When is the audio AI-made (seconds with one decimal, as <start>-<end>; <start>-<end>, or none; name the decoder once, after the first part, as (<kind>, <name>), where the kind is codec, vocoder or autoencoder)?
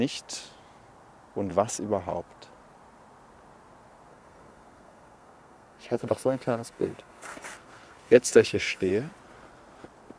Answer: 4.1-8.9 (codec, SNAC)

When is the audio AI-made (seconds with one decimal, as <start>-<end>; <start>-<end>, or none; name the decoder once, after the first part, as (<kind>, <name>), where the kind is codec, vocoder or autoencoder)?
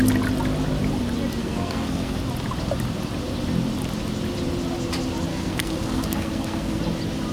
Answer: 1.4-2.2 (codec, SNAC); 5.3-6.8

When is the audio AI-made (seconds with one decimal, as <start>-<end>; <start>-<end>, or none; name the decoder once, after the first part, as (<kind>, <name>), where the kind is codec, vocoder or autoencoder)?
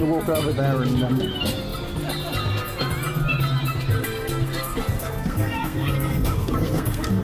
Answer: 4.0-7.2 (codec, SNAC)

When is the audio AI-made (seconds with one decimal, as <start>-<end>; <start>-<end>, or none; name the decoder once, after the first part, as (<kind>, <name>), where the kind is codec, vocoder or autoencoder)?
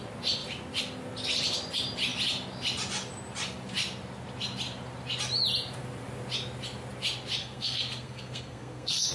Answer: 7.4-9.1 (codec, SNAC)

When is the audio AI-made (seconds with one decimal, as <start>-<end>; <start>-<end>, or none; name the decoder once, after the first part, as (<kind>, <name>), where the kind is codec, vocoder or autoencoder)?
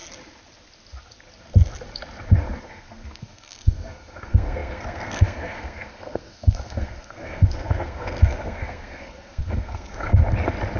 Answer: 2.6-10.2 (codec, SNAC)